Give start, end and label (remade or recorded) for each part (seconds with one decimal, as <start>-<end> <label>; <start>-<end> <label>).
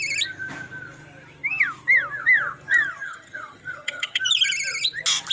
0.0-2.9 recorded; 2.9-4.2 remade; 4.2-5.3 recorded